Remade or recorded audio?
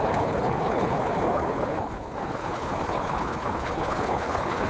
remade